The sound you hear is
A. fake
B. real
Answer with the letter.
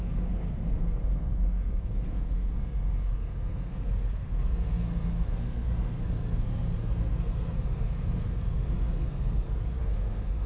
A